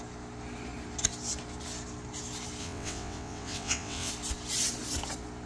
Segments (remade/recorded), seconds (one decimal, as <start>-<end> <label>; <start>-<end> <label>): 0.0-2.6 recorded; 2.6-4.1 remade; 4.1-5.5 recorded